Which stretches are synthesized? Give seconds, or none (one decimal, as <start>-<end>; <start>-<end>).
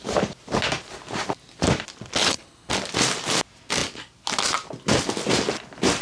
2.2-2.7